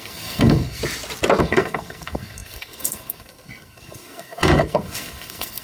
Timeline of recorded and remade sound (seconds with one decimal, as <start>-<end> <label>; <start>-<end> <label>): 0.0-0.8 remade; 0.8-1.4 recorded; 1.4-5.6 remade